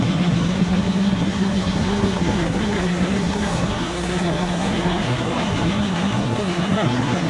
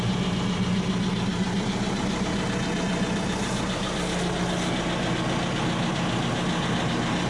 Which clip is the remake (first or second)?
first